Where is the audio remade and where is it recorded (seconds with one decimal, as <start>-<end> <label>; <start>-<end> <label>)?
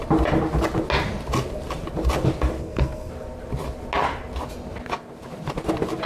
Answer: 0.0-2.6 recorded; 2.6-3.1 remade; 3.1-6.1 recorded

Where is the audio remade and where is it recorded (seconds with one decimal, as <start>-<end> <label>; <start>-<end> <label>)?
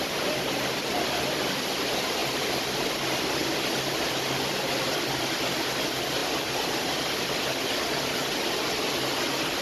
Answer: 0.0-9.6 recorded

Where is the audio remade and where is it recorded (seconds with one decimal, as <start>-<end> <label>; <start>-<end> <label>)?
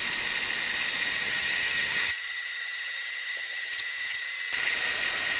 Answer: 0.0-1.2 recorded; 1.2-4.4 remade; 4.4-5.4 recorded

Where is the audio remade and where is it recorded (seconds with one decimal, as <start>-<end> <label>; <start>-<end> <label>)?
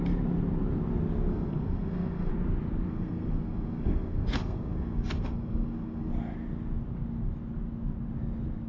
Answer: 0.0-1.3 recorded; 1.3-2.3 remade; 2.3-2.9 recorded; 2.9-6.1 remade; 6.1-8.7 recorded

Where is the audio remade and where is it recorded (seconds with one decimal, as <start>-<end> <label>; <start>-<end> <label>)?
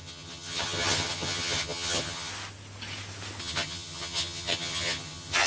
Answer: 0.0-2.3 remade; 2.3-3.4 recorded; 3.4-5.5 remade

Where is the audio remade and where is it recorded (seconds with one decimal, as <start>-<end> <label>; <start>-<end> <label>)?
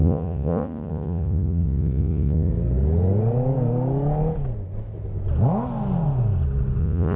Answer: 0.0-2.5 remade; 2.5-6.8 recorded; 6.8-7.2 remade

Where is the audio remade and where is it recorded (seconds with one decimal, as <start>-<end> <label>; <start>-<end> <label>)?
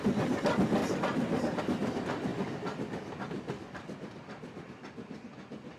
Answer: 0.0-0.8 recorded; 0.8-1.6 remade; 1.6-5.8 recorded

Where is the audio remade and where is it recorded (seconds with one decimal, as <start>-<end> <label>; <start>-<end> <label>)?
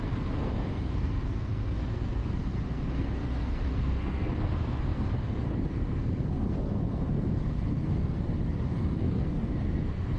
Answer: 0.0-10.2 remade